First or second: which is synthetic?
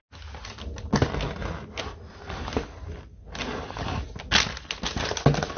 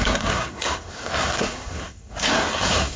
second